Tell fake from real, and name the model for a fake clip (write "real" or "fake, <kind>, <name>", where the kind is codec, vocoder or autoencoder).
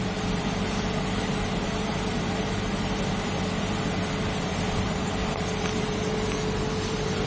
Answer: fake, vocoder, BigVGAN v2